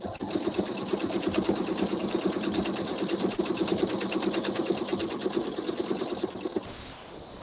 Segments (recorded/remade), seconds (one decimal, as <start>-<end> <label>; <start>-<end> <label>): 0.0-7.4 recorded